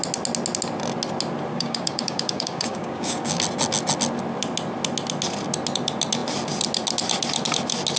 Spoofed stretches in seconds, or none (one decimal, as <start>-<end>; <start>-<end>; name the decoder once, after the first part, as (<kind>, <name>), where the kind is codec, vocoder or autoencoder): 1.5-3.4 (codec, DAC)